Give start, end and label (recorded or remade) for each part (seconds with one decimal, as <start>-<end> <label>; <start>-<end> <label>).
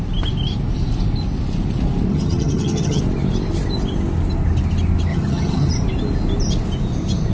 0.0-2.1 recorded; 2.1-3.0 remade; 3.0-5.1 recorded; 5.1-5.7 remade; 5.7-7.3 recorded